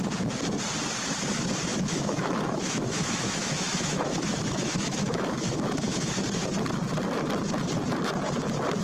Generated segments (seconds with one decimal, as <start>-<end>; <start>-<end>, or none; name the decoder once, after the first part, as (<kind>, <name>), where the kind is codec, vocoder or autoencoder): 1.7-6.2 (autoencoder, DAC-VAE)